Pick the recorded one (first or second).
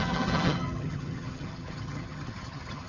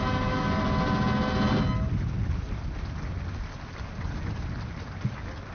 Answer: second